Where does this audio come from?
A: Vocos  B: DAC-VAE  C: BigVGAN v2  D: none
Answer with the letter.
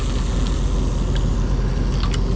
D